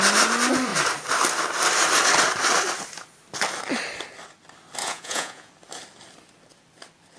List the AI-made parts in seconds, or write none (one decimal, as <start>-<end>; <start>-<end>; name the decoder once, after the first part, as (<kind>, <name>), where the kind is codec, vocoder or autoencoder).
4.8-5.5 (vocoder, Vocos)